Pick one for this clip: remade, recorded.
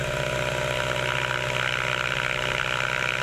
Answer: recorded